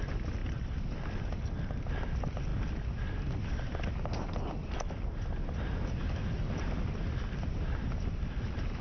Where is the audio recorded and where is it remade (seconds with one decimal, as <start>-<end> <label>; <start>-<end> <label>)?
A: 0.0-8.8 recorded